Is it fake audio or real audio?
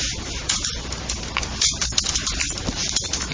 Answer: real